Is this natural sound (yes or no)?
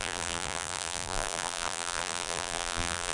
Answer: no